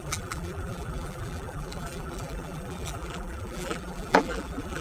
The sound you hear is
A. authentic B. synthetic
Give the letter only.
B